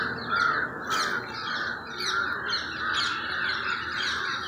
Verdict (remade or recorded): recorded